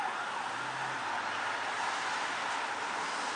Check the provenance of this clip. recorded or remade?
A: recorded